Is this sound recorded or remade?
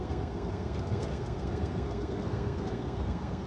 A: remade